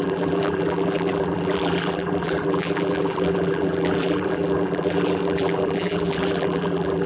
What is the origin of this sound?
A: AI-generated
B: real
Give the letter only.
A